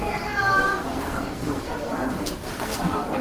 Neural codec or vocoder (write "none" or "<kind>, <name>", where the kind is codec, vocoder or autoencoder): codec, SNAC